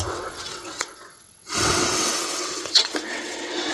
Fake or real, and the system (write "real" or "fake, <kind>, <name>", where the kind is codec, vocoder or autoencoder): fake, vocoder, WaveNeXt